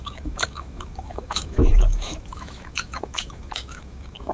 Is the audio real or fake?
fake